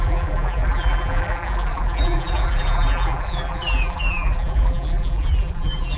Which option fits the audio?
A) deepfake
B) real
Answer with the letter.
A